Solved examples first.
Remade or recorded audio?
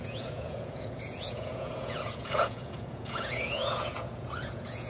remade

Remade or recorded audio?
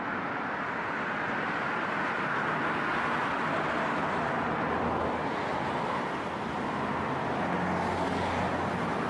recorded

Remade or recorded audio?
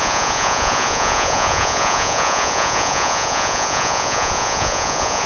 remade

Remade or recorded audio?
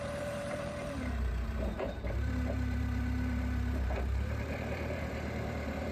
remade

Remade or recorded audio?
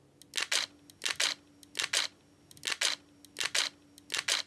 recorded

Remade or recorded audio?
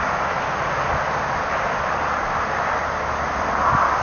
recorded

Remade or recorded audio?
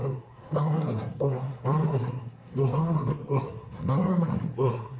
remade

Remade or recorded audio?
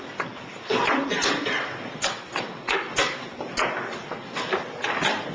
recorded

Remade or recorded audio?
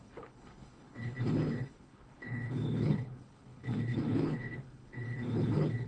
remade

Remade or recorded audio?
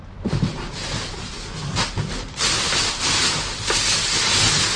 recorded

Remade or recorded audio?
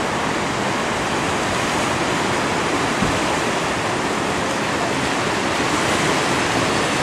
recorded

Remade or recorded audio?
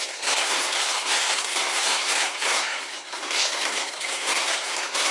remade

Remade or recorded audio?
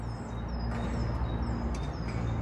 recorded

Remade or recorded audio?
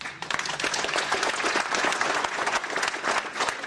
remade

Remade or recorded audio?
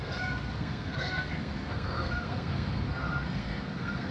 remade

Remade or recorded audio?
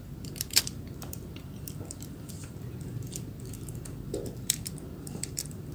remade